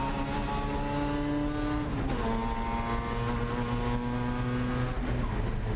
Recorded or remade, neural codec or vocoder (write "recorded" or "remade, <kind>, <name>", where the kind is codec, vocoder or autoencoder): recorded